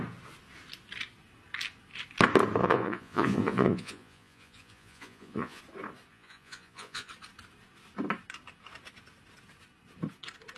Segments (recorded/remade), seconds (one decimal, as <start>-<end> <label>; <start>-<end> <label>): 0.0-2.6 recorded; 2.6-5.6 remade; 5.6-6.1 recorded; 6.1-7.1 remade; 7.1-10.6 recorded

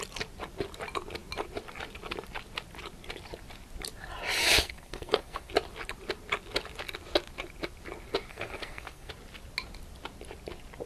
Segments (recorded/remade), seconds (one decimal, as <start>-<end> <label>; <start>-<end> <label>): 0.0-4.4 recorded; 4.4-5.5 remade; 5.5-8.3 recorded; 8.3-9.1 remade; 9.1-10.9 recorded

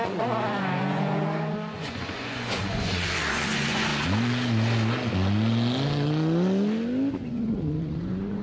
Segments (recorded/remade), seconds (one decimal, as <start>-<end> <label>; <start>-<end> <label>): 0.0-3.9 remade; 3.9-7.1 recorded; 7.1-8.4 remade

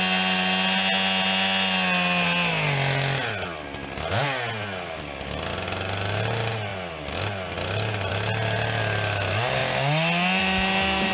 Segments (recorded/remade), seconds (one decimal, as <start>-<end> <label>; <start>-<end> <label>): 0.0-11.1 recorded

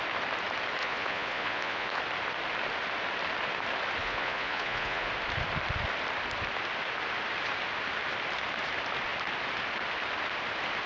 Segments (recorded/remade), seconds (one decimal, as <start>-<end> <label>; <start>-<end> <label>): 0.0-0.8 recorded; 0.8-2.0 remade; 2.0-4.0 recorded; 4.0-5.1 remade; 5.1-10.9 recorded

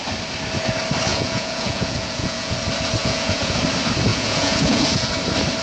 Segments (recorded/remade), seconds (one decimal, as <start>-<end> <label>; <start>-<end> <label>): 0.0-1.1 recorded; 1.1-2.6 remade; 2.6-3.0 recorded; 3.0-3.6 remade; 3.6-4.1 recorded; 4.1-5.1 remade; 5.1-5.6 recorded